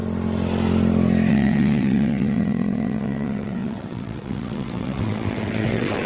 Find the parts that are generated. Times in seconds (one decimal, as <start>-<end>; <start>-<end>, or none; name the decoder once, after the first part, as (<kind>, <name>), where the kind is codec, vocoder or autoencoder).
1.3-6.1 (vocoder, WaveNeXt)